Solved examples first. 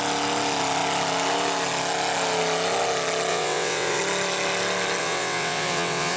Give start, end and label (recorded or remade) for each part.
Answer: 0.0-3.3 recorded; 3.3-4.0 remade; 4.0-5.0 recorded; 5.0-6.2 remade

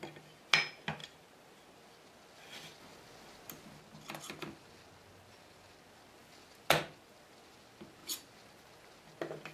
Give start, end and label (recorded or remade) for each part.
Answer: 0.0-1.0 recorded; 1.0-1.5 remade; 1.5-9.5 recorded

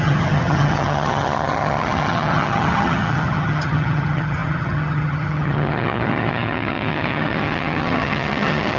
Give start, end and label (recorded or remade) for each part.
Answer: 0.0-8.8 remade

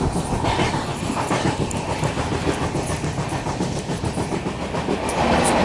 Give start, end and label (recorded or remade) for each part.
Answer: 0.0-5.6 recorded

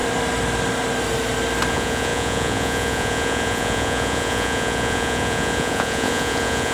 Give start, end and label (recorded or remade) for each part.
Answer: 0.0-1.7 recorded; 1.7-6.7 remade

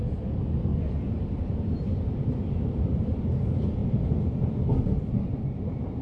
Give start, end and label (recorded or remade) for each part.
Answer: 0.0-0.7 remade; 0.7-1.4 recorded; 1.4-3.8 remade; 3.8-5.1 recorded; 5.1-6.0 remade

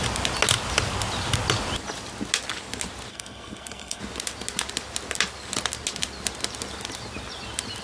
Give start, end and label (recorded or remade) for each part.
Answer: 0.0-3.1 recorded; 3.1-4.0 remade; 4.0-7.8 recorded

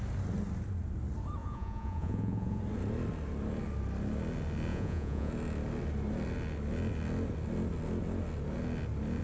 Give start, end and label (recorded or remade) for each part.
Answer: 0.0-1.4 recorded; 1.4-2.6 remade; 2.6-4.7 recorded; 4.7-5.3 remade; 5.3-9.2 recorded